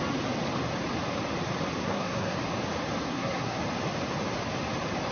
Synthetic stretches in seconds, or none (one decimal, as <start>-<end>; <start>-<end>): 1.8-2.4; 3.0-3.6